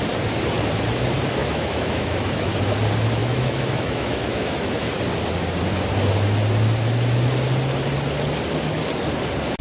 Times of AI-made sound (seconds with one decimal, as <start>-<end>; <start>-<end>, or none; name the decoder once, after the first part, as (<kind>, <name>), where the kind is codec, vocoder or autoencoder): 1.4-2.6 (autoencoder, DAC-VAE); 3.2-4.9

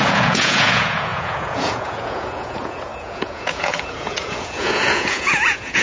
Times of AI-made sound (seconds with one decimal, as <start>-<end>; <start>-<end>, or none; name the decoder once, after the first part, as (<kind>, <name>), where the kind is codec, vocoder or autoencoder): 0.0-5.8 (vocoder, Vocos)

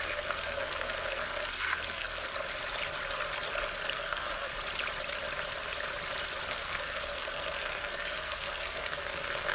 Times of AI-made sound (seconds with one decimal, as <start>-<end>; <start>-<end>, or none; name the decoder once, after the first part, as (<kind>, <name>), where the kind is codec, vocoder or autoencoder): 0.0-2.3 (codec, SNAC); 3.9-4.5; 6.5-9.5

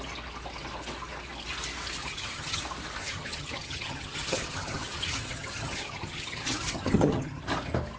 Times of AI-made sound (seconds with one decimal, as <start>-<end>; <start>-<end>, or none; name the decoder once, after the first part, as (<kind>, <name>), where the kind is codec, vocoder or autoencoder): 2.0-2.6 (vocoder, HiFi-GAN); 3.0-7.4

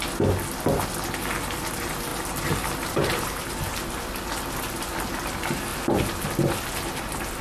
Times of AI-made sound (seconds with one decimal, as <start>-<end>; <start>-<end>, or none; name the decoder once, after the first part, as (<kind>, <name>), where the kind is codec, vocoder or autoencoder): 2.1-3.5 (vocoder, BigVGAN v2)

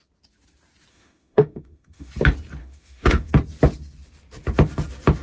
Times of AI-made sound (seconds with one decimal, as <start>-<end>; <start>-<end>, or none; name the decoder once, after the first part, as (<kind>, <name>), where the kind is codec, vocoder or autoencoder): 0.9-2.1 (autoencoder, DAC-VAE); 2.6-3.3